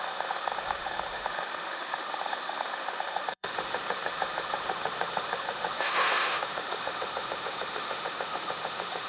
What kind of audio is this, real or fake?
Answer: fake